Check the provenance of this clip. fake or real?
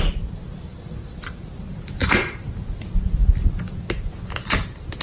real